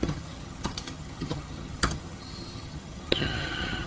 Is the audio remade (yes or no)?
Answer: yes